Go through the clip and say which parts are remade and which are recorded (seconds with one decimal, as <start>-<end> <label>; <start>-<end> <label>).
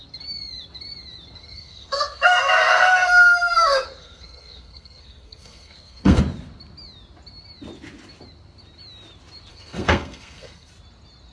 0.0-1.4 recorded; 1.4-6.2 remade; 6.2-9.5 recorded; 9.5-10.7 remade; 10.7-11.3 recorded